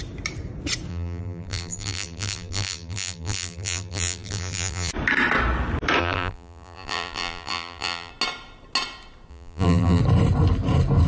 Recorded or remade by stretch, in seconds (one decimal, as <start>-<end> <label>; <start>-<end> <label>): 0.0-0.9 recorded; 0.9-4.9 remade; 4.9-6.0 recorded; 6.0-8.1 remade; 8.1-9.3 recorded; 9.3-10.0 remade; 10.0-11.1 recorded